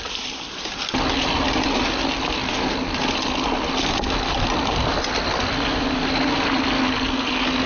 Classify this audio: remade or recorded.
recorded